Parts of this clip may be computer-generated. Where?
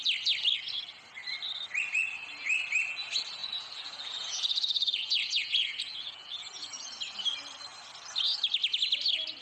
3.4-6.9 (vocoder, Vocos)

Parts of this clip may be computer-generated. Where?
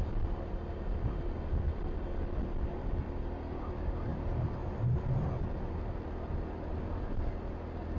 none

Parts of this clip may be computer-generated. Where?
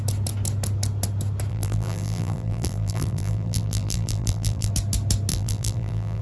1.5-4.7 (vocoder, BigVGAN v2); 5.3-6.2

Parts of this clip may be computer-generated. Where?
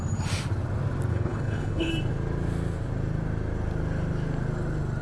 1.1-1.9 (codec, HILCodec)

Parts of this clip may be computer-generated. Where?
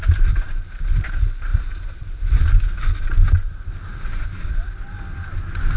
none